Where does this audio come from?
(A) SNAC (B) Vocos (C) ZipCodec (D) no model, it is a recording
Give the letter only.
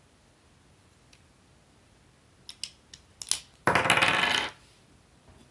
D